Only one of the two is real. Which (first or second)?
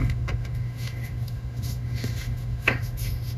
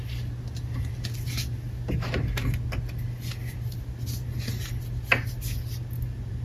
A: second